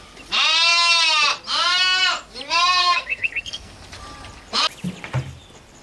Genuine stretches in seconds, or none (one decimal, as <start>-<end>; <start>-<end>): 0.0-2.8; 3.7-5.8